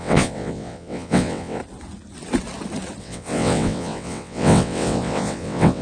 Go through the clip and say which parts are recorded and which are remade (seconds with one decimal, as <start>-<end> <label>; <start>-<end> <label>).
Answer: 0.0-1.6 remade; 1.6-3.0 recorded; 3.0-5.8 remade